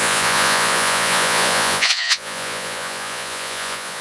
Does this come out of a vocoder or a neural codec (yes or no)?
yes